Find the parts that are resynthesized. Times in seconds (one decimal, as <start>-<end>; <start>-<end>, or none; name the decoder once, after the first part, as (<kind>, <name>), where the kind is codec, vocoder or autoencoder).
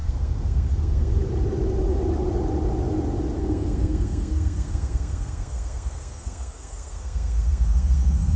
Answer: 0.0-1.1 (codec, SNAC); 3.4-8.4